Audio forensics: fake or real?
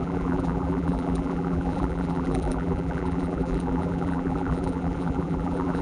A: fake